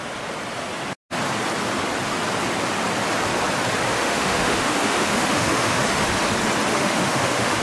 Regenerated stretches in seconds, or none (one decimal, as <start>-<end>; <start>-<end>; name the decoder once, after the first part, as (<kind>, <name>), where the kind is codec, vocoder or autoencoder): 3.9-6.0 (autoencoder, DAC-VAE); 6.7-7.6